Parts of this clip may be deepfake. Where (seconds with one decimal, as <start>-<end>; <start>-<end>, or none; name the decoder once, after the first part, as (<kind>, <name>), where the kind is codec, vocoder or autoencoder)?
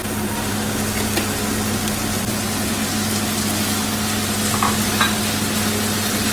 none